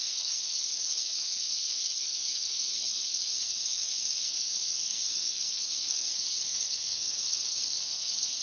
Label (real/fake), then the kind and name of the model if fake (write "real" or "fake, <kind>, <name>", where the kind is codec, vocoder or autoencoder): fake, codec, SNAC